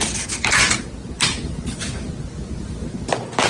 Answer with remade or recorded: recorded